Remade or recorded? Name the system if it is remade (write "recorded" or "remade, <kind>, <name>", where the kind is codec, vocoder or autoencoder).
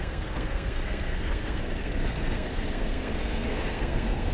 remade, codec, SNAC